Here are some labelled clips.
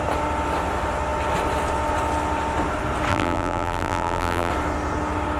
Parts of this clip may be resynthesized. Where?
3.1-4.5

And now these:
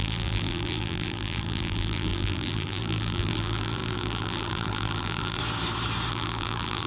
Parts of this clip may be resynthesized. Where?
0.0-5.4; 6.1-6.9

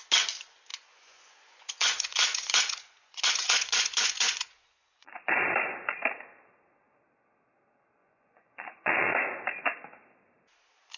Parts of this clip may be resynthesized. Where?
0.7-5.3; 8.0-9.1

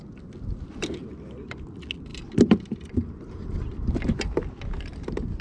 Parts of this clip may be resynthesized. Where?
none

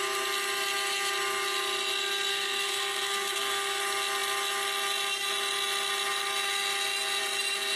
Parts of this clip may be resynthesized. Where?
2.3-3.8